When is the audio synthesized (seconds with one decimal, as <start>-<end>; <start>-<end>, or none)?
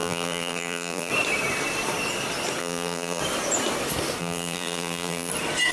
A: 0.0-1.1; 2.6-3.2; 4.2-5.3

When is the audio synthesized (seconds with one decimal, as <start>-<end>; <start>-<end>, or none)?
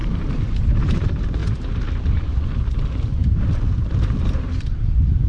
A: 0.0-1.4; 2.0-5.3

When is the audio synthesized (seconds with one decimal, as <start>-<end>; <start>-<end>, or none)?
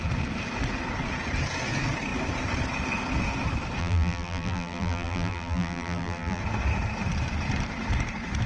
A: 3.8-6.4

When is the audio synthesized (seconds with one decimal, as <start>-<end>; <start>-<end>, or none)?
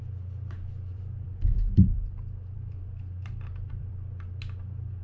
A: 0.9-3.9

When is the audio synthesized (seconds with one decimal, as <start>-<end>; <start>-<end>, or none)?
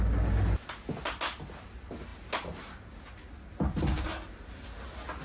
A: none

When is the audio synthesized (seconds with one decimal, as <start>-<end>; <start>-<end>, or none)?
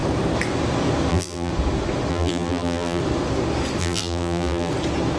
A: 1.1-1.5; 2.1-3.0; 3.8-4.7